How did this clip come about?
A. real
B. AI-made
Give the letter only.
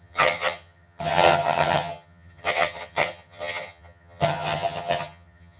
B